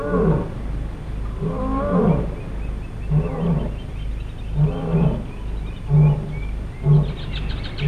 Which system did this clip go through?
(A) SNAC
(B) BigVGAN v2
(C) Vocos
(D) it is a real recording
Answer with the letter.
D